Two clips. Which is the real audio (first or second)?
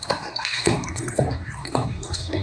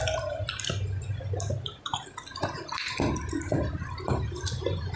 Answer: second